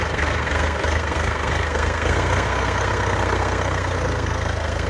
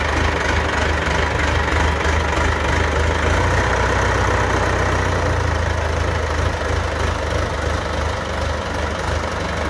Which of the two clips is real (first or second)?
second